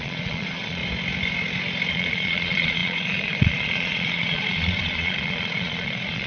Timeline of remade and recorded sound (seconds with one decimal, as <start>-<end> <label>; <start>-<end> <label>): 0.0-0.8 remade; 0.8-1.9 recorded; 1.9-6.3 remade